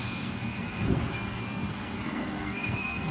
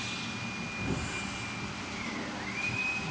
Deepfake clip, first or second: first